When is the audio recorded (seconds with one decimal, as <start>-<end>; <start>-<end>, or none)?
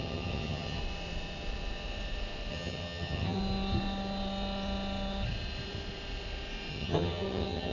0.8-2.5; 3.4-6.7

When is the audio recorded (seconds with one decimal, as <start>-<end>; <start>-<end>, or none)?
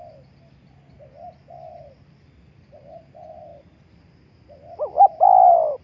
0.0-5.8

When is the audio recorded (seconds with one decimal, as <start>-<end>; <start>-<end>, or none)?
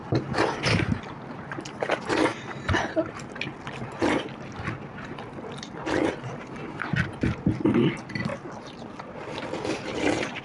0.0-10.4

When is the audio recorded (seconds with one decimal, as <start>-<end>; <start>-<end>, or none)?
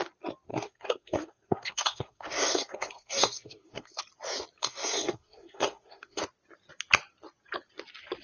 0.0-0.5; 4.0-4.6; 6.2-8.2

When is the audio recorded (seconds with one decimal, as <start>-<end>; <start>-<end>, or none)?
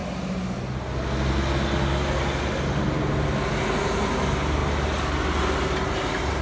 0.0-6.4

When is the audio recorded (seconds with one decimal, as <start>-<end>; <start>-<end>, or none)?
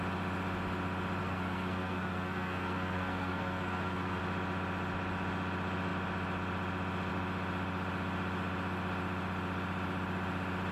0.0-1.2; 4.2-10.7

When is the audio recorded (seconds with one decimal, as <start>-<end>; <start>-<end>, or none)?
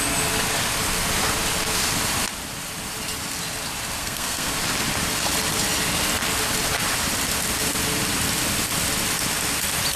0.0-4.0; 4.5-10.0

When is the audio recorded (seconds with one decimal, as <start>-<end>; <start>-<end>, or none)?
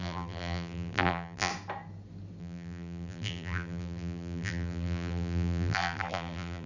1.5-2.4